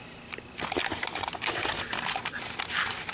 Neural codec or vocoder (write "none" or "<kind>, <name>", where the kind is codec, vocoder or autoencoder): none